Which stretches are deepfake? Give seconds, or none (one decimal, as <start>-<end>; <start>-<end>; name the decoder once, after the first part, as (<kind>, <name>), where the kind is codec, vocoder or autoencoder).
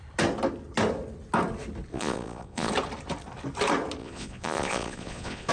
1.9-2.7 (vocoder, Vocos); 4.0-5.5